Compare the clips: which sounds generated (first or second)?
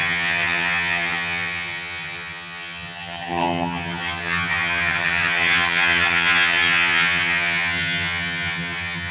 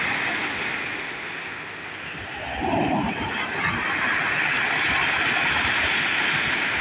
first